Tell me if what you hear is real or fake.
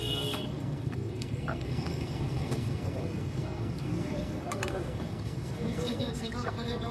fake